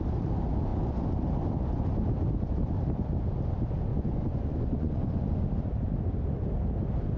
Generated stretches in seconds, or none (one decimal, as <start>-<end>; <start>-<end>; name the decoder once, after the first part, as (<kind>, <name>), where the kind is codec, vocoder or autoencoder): 3.9-5.4 (vocoder, Vocos)